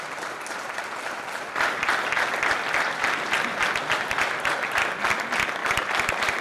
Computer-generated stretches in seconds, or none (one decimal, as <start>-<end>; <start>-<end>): none